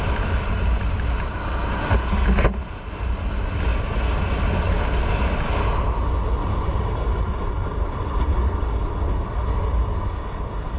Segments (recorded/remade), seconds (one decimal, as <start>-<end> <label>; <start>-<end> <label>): 0.0-6.4 recorded; 6.4-7.0 remade; 7.0-7.6 recorded; 7.6-8.3 remade; 8.3-10.8 recorded